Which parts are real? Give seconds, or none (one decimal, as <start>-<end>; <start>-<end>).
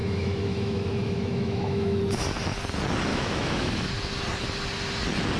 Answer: 2.0-3.1; 3.9-5.4